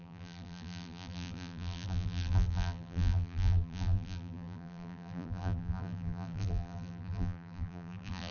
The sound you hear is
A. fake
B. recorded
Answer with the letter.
A